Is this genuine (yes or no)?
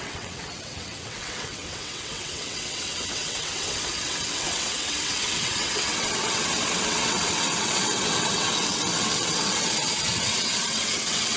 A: no